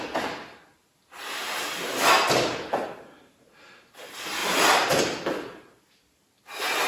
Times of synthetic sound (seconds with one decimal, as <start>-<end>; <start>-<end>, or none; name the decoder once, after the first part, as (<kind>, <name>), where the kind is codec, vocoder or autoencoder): 4.4-5.0 (vocoder, BigVGAN v2)